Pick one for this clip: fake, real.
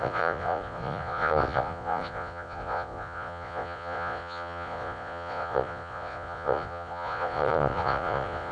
fake